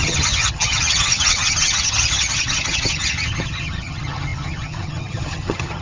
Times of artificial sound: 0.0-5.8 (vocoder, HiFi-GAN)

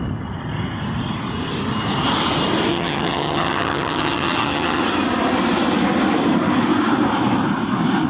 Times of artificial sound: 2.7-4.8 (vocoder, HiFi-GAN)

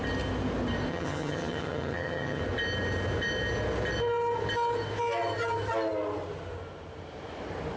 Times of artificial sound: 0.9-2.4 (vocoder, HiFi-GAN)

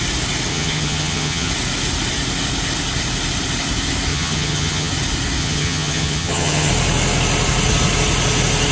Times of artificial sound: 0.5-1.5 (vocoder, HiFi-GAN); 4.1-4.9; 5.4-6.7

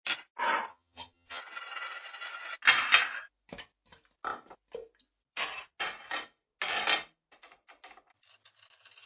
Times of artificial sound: 0.7-1.4 (vocoder, HiFi-GAN)

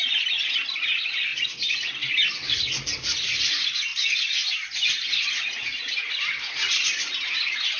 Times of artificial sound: none

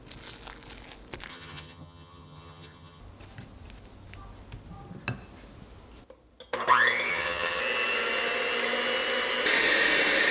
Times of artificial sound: 1.3-3.0 (vocoder, HiFi-GAN); 7.1-7.6

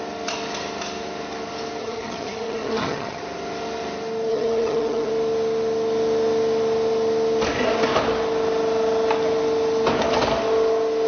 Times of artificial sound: 1.8-3.2 (vocoder, HiFi-GAN); 4.3-5.1